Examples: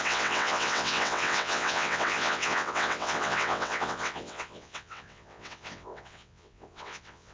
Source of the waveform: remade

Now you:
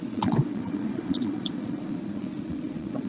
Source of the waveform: remade